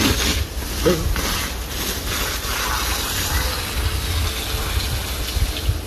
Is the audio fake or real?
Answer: real